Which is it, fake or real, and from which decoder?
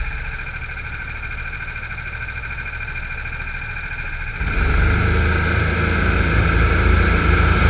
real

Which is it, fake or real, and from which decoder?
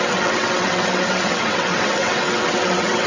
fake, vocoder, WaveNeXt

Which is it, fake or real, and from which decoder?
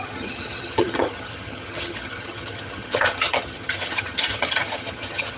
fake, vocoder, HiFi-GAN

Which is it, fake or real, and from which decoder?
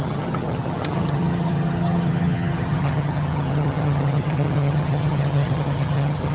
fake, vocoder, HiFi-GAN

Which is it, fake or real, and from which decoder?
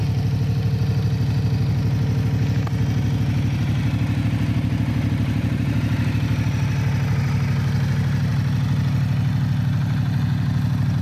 real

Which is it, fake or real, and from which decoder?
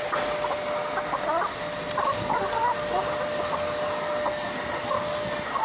real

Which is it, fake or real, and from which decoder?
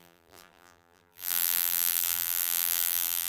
fake, vocoder, BigVGAN v2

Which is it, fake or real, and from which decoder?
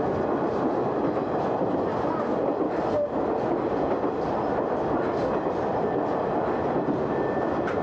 real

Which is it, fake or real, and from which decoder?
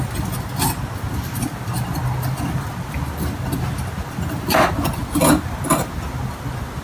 real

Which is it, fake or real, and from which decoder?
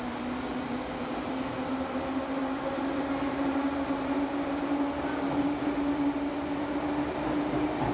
real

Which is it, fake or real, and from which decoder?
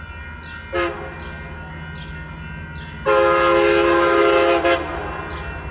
real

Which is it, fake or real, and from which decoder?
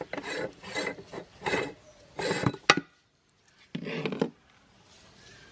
real